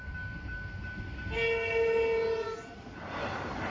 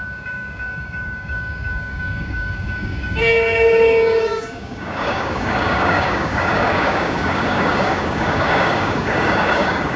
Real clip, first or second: first